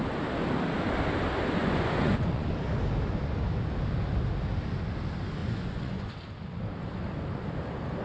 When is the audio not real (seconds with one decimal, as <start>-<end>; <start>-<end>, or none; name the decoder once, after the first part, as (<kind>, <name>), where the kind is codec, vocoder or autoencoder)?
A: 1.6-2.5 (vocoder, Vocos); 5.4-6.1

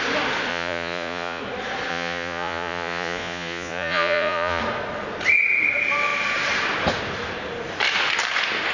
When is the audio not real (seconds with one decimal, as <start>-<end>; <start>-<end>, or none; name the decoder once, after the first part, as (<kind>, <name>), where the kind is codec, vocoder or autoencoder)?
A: 0.5-1.4 (vocoder, Vocos); 1.9-4.6

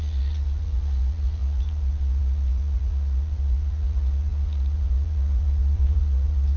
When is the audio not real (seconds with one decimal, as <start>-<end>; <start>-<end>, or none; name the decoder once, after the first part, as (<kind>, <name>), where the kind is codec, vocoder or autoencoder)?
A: 0.0-6.6 (vocoder, Vocos)

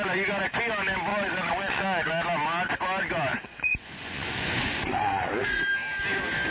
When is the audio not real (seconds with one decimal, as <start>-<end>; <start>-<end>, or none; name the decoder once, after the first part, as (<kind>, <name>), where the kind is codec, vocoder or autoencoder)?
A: 1.1-2.1 (vocoder, Vocos); 3.3-5.6